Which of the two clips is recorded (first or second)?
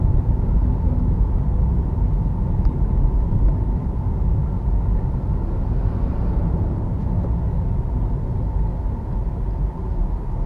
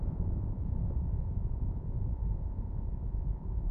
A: first